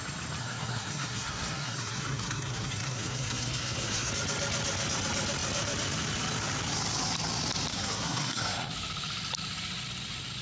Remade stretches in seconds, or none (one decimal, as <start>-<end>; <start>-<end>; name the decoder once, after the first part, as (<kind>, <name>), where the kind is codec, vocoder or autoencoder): 0.4-4.1 (codec, SNAC); 7.7-8.7